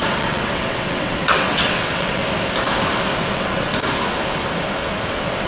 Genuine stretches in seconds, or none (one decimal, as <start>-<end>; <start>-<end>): 2.2-3.3; 3.7-5.1